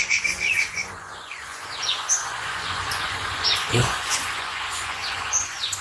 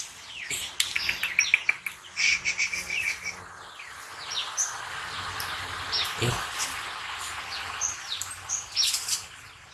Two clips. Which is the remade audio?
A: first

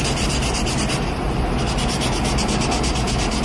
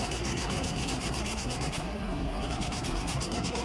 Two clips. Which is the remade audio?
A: second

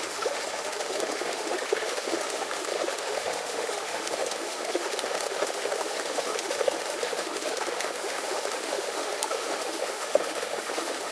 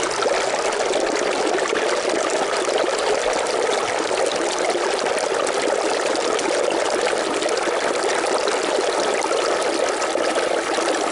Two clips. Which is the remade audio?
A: first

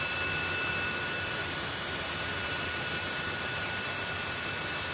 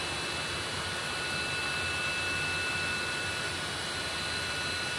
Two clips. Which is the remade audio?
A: first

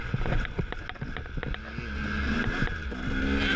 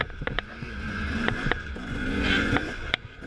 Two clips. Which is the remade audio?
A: second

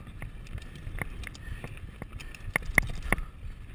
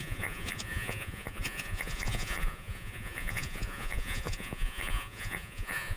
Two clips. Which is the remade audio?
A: second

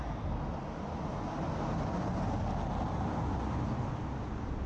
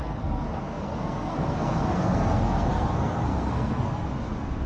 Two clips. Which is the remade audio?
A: second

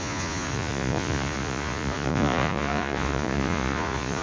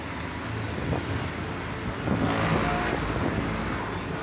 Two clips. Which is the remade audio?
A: first